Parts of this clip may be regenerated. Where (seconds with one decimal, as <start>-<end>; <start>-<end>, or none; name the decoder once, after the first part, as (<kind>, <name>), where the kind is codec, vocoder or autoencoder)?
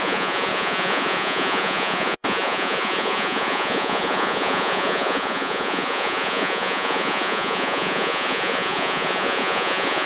0.0-10.1 (vocoder, Vocos)